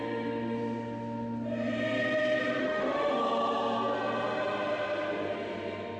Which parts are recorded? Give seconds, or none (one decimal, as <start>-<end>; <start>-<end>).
0.0-2.6; 3.2-6.0